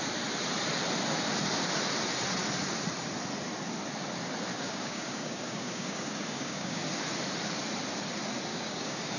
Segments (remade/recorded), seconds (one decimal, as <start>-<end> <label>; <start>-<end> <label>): 0.0-4.5 recorded; 4.5-6.8 remade; 6.8-8.5 recorded; 8.5-9.2 remade